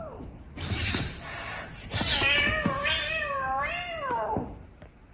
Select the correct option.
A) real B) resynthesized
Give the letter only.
B